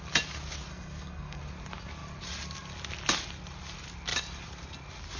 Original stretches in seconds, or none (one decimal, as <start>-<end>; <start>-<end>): 0.0-0.7; 1.4-5.2